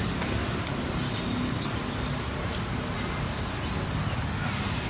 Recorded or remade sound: recorded